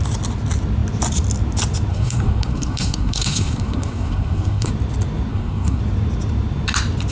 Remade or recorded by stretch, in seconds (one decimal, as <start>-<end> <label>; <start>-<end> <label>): 0.0-1.9 recorded; 1.9-4.7 remade; 4.7-5.3 recorded; 5.3-5.8 remade; 5.8-7.1 recorded